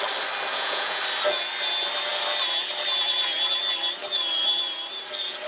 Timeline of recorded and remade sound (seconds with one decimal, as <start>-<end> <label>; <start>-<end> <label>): 0.0-0.5 recorded; 0.5-1.0 remade; 1.0-5.5 recorded